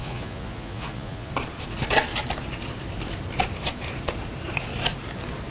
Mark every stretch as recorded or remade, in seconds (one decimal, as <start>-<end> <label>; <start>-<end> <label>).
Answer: 0.0-1.3 remade; 1.3-5.5 recorded